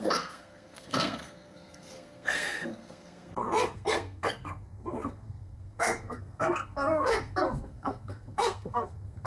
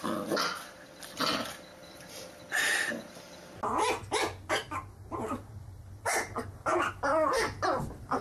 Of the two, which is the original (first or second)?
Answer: second